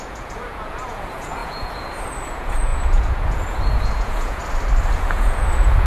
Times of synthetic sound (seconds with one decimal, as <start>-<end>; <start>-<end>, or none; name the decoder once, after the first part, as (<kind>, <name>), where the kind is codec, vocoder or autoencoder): 0.0-4.4 (vocoder, Vocos); 4.9-5.9